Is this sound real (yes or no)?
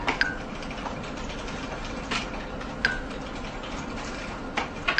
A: yes